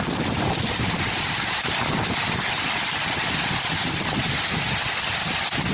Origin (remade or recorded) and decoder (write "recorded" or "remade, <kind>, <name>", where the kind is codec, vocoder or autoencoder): recorded